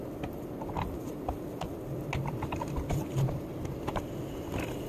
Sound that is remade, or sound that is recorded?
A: recorded